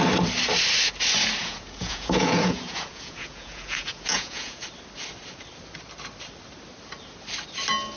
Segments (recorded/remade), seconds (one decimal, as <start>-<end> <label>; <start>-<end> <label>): 0.0-1.4 recorded; 1.4-4.6 remade; 4.6-8.0 recorded